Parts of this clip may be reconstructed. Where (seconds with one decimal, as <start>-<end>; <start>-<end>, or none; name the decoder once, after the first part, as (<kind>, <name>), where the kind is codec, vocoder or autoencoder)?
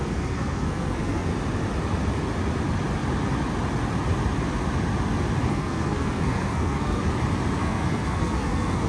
0.0-1.3 (codec, SNAC); 5.5-7.0; 7.6-8.9